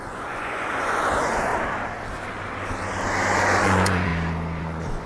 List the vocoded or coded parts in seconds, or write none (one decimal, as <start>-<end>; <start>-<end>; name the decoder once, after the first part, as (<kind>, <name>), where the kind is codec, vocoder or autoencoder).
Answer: 0.0-1.5 (vocoder, Vocos); 3.6-4.1; 4.6-5.1